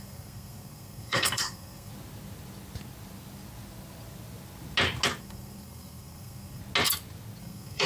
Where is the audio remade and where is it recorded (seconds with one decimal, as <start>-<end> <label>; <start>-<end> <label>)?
0.0-1.9 remade; 1.9-5.2 recorded; 5.2-6.6 remade; 6.6-7.4 recorded; 7.4-7.9 remade